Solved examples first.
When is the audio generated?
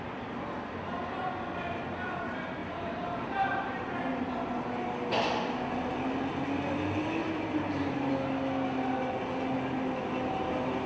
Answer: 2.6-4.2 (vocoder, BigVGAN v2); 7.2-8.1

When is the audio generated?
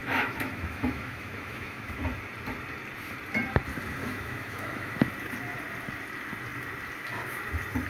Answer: 0.0-2.0 (autoencoder, DAC-VAE); 4.0-4.9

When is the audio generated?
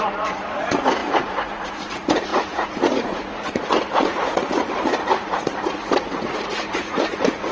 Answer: 0.0-7.5 (vocoder, Vocos)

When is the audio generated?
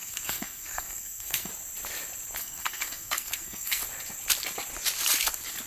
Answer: 0.0-1.5 (codec, SNAC); 2.4-3.8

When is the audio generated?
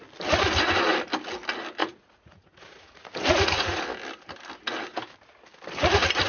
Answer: 1.8-3.8 (vocoder, Vocos)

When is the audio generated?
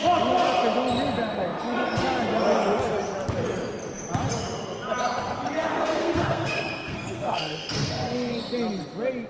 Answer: 5.7-8.4 (codec, SNAC)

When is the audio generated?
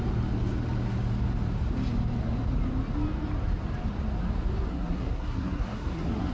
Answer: 4.7-6.3 (codec, SNAC)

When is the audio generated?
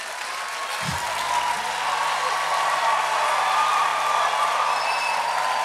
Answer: none